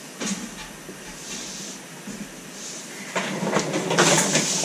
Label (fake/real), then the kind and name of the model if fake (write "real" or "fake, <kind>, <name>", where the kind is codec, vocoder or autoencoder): real